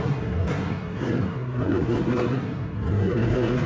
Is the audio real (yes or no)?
no